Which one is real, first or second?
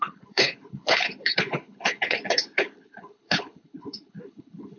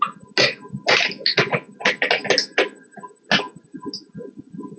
second